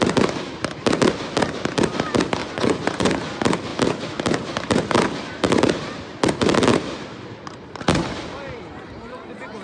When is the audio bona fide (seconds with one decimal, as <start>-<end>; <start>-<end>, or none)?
0.0-2.4; 3.1-9.6